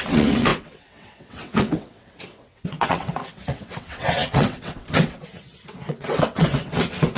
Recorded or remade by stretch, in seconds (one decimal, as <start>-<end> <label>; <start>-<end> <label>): 0.0-7.2 remade